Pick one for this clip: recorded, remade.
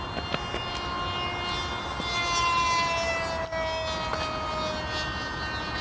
recorded